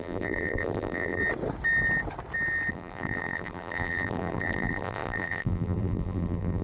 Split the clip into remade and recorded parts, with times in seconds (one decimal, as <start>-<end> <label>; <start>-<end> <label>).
0.0-1.2 remade; 1.2-2.7 recorded; 2.7-6.6 remade